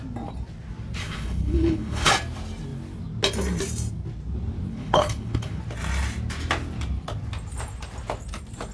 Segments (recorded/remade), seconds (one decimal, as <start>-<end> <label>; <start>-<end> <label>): 0.0-1.0 recorded; 1.0-2.1 remade; 2.1-4.7 recorded; 4.7-5.6 remade; 5.6-8.7 recorded